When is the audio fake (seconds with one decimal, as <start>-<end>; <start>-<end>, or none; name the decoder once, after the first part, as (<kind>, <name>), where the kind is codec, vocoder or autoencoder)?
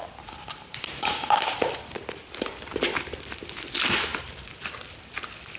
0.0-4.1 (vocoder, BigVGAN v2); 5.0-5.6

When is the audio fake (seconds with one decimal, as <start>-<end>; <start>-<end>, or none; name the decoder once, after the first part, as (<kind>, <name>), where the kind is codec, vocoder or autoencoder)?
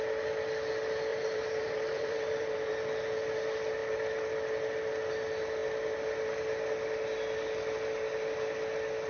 1.1-2.7 (vocoder, BigVGAN v2)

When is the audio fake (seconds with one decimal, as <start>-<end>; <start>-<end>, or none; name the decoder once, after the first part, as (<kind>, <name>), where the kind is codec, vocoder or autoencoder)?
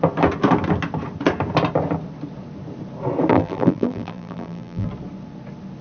3.3-4.9 (vocoder, BigVGAN v2)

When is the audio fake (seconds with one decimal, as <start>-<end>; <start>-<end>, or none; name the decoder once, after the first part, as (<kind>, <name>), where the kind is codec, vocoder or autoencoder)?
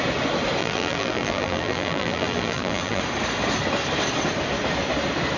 0.6-3.0 (vocoder, BigVGAN v2)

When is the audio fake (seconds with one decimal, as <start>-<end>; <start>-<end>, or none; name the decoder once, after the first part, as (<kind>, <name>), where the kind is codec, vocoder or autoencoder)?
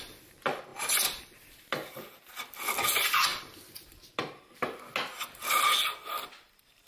3.3-4.2 (vocoder, BigVGAN v2)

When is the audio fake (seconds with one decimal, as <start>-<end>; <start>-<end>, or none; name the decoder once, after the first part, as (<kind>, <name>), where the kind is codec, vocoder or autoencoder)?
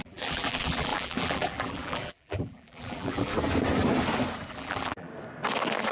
0.0-3.3 (vocoder, BigVGAN v2); 4.5-5.1